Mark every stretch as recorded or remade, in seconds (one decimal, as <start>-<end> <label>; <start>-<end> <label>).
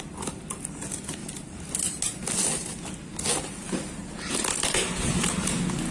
0.0-5.9 recorded